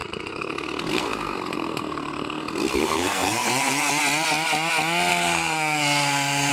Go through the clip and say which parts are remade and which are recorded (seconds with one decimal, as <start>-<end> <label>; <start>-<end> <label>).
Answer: 0.0-3.9 remade; 3.9-5.1 recorded; 5.1-6.5 remade